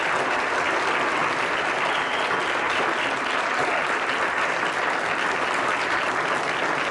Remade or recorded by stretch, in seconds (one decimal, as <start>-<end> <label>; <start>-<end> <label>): 0.0-6.9 recorded